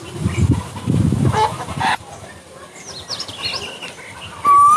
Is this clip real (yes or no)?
yes